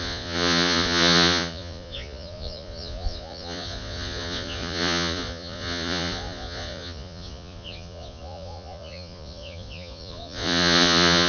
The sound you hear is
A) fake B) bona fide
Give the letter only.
A